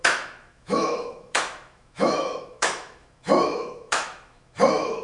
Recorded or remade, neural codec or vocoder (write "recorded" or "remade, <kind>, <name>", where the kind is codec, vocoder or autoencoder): remade, autoencoder, DAC-VAE